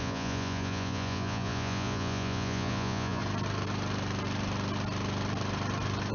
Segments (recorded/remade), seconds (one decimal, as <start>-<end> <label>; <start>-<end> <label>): 0.0-3.2 remade; 3.2-6.1 recorded